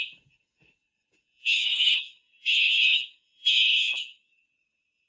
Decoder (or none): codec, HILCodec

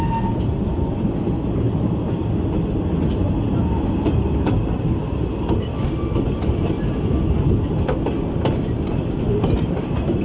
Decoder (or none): none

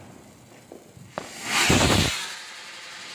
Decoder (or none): none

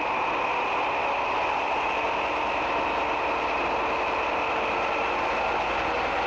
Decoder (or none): none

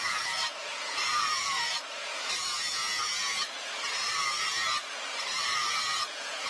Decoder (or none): vocoder, Vocos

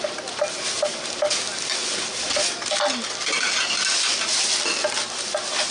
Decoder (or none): none